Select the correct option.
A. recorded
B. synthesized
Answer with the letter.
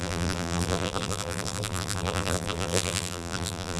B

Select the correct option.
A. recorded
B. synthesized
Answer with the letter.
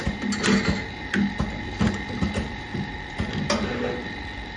A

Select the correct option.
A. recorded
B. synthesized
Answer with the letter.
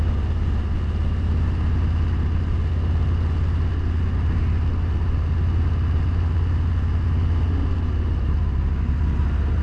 A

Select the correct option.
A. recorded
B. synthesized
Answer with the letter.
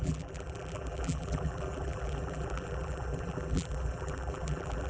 B